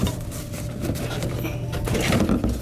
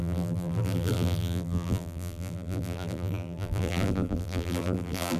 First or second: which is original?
first